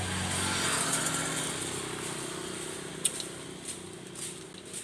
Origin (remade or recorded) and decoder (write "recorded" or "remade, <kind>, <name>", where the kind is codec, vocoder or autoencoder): recorded